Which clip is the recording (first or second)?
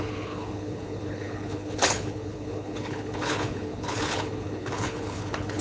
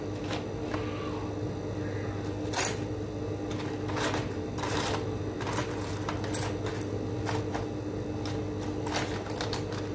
second